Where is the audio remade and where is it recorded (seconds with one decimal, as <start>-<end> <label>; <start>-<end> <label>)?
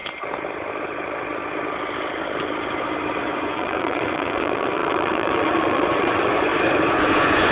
0.0-3.2 recorded; 3.2-6.5 remade; 6.5-7.0 recorded; 7.0-7.5 remade